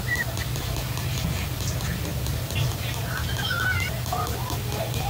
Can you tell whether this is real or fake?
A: real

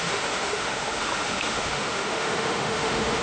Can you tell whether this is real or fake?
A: fake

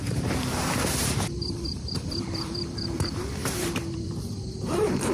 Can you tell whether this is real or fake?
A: fake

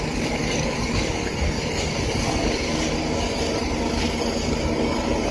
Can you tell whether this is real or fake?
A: fake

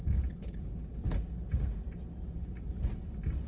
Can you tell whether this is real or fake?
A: real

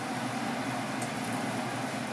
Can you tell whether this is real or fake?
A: real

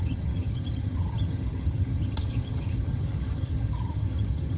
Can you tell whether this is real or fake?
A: fake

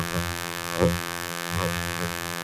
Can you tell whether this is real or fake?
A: fake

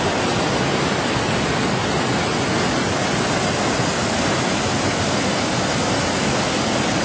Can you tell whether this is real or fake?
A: real